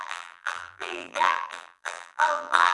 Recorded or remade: remade